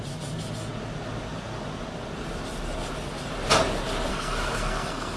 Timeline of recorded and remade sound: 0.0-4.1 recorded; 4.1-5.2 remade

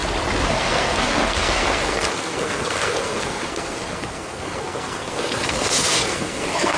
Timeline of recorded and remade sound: 0.0-0.5 recorded; 0.5-6.8 remade

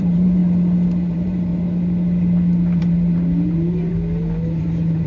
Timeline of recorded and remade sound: 0.0-0.4 remade; 0.4-1.1 recorded; 1.1-1.5 remade; 1.5-2.8 recorded; 2.8-3.9 remade; 3.9-4.6 recorded; 4.6-5.1 remade

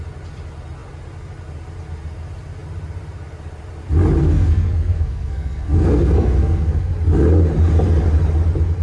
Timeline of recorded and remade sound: 0.0-4.2 recorded; 4.2-6.9 remade; 6.9-8.8 recorded

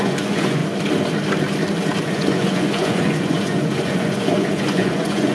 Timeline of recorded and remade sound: 0.0-0.6 remade; 0.6-2.0 recorded; 2.0-5.3 remade